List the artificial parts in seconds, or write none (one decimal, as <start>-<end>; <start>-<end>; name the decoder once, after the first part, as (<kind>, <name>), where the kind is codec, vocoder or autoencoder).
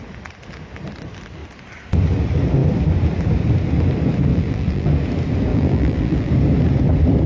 4.3-4.9 (vocoder, BigVGAN v2); 5.5-6.3